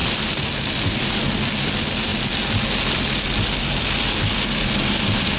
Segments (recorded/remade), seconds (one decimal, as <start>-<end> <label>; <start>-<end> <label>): 0.0-5.4 recorded